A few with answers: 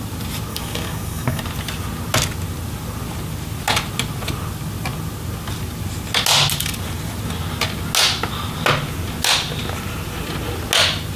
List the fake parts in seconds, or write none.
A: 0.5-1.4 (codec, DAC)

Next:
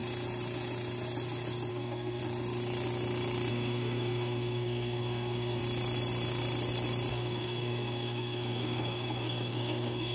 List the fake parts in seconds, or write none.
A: 1.7-2.2 (codec, SNAC); 3.5-5.6; 7.1-10.1

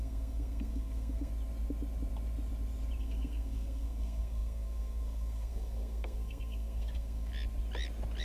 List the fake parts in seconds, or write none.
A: 0.0-1.3 (codec, SNAC); 3.0-7.3

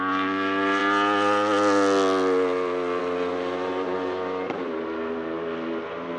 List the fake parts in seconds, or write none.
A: 0.0-0.8 (vocoder, BigVGAN v2); 3.0-6.2